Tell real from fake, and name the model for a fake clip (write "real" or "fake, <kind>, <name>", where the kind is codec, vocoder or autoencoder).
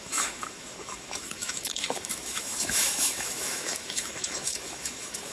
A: fake, autoencoder, DAC-VAE